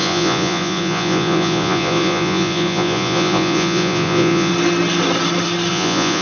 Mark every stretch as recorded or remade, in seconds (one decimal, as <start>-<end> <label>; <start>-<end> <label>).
0.0-4.5 remade; 4.5-5.7 recorded; 5.7-6.2 remade